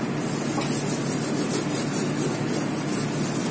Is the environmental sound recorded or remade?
recorded